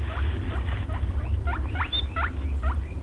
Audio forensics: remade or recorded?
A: recorded